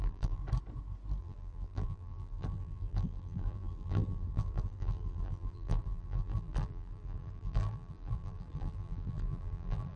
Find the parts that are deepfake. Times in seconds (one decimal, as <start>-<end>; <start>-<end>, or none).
0.0-0.4; 1.2-10.0